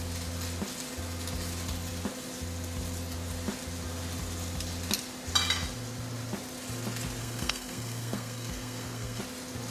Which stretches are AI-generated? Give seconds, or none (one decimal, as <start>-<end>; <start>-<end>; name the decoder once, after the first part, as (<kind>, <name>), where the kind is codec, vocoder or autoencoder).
7.2-9.2 (codec, SNAC)